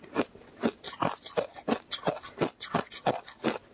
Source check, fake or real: real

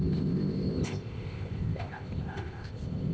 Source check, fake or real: fake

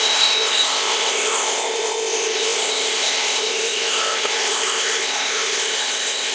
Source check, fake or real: fake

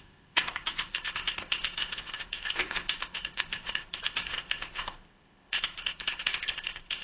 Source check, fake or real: fake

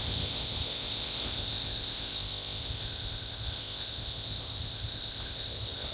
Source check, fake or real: fake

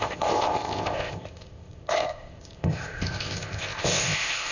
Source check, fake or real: fake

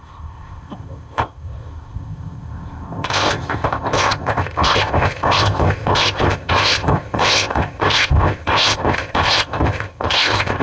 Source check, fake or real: fake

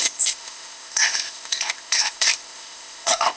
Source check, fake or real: fake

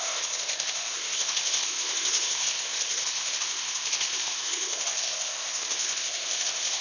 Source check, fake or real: fake